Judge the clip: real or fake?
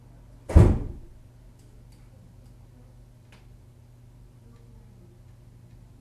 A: real